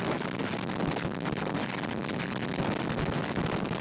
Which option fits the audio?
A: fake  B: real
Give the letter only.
B